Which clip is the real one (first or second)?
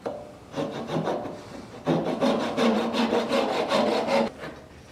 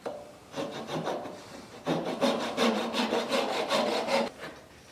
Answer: first